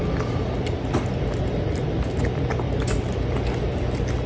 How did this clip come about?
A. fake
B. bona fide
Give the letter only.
B